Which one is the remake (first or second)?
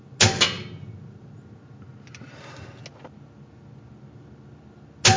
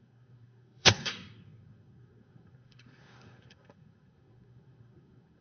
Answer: second